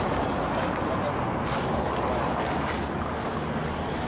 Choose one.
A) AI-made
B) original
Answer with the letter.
B